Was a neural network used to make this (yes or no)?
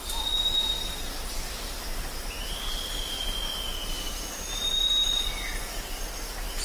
no